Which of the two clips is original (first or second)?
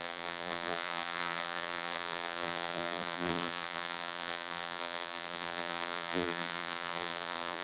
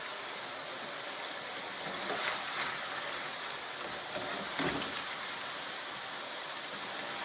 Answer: second